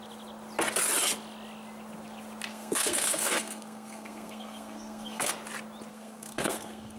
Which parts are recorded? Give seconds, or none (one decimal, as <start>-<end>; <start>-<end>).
0.0-2.5; 5.3-5.9